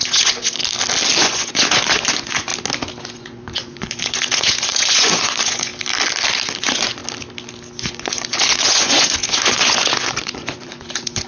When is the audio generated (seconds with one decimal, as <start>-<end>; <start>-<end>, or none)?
0.0-0.6; 1.2-2.5; 3.0-5.7; 6.6-7.0; 7.8-11.3